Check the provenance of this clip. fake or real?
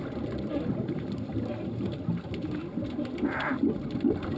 real